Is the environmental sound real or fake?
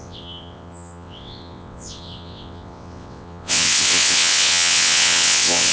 fake